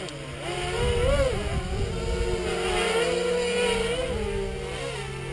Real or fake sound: real